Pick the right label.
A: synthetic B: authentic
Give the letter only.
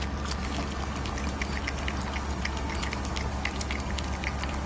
B